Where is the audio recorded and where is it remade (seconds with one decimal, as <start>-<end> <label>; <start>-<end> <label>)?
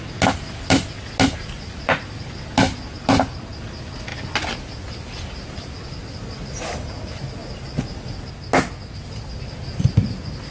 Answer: 0.0-10.5 recorded